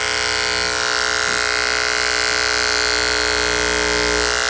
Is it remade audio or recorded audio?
recorded